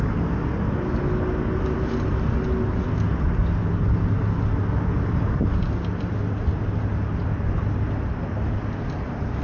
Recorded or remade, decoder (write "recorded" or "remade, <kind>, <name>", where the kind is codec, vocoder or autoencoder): recorded